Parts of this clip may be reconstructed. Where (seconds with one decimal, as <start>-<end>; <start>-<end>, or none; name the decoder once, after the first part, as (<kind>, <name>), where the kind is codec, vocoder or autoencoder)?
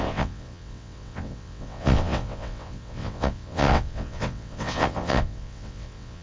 0.0-6.2 (vocoder, WaveNeXt)